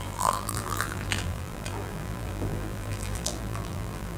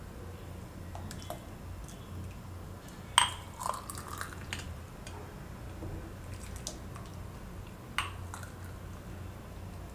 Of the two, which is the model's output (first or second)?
first